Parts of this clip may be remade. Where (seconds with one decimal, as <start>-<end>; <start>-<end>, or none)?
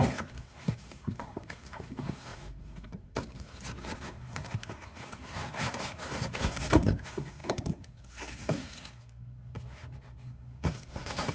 0.0-11.3